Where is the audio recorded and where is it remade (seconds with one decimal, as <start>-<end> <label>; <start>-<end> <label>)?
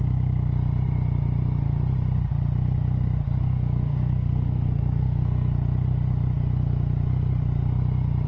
0.0-3.4 recorded; 3.4-5.5 remade; 5.5-8.3 recorded